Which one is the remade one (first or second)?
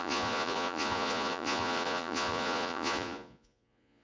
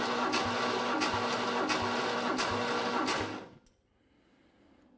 first